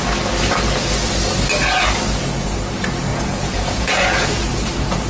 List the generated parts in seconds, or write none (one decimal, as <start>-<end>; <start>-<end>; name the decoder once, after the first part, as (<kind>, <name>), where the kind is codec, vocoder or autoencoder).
3.1-4.5 (vocoder, Vocos)